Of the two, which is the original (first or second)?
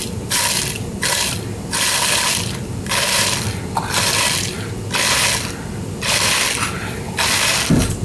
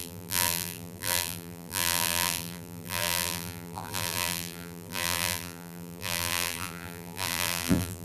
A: first